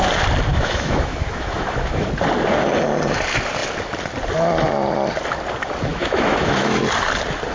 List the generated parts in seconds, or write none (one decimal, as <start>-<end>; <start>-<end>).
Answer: 0.5-2.1; 5.9-6.8